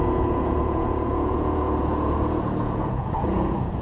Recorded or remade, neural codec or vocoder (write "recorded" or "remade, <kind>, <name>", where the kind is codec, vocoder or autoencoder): remade, vocoder, Vocos